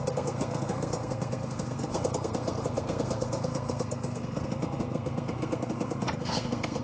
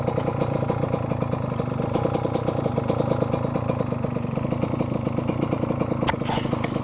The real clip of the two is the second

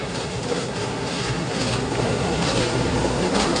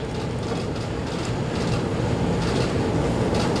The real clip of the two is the second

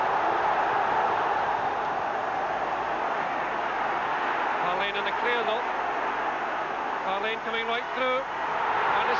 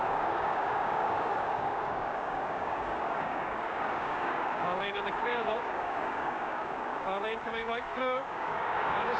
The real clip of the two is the first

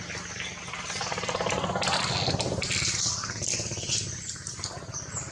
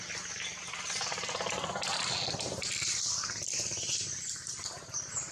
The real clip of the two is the first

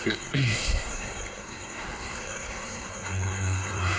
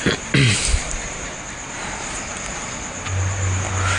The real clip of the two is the second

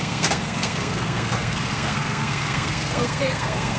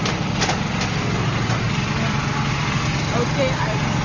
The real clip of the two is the second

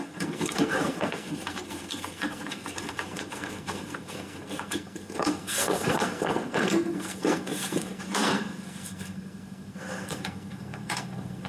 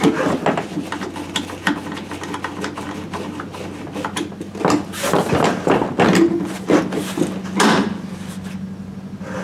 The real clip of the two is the second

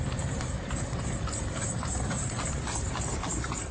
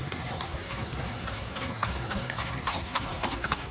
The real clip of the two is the first